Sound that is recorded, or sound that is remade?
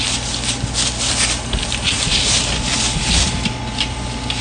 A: recorded